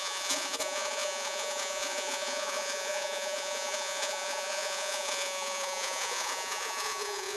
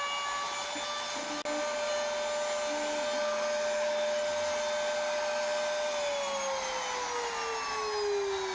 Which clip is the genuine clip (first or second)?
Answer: second